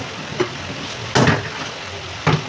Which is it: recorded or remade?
recorded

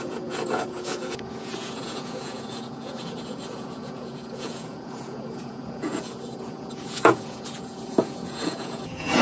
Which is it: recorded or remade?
remade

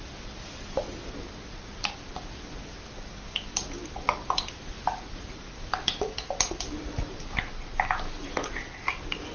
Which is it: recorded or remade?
recorded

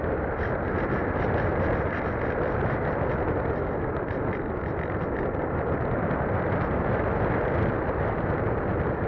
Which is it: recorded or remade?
recorded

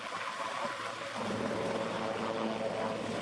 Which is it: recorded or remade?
recorded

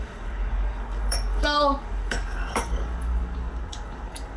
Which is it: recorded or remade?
remade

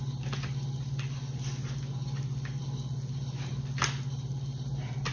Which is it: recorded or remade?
recorded